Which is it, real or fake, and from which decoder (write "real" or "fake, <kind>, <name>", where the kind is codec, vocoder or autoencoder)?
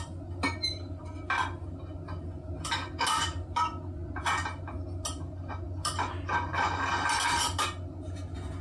real